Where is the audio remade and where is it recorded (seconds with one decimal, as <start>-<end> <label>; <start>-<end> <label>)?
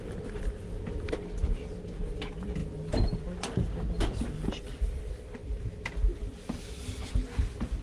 0.0-7.8 recorded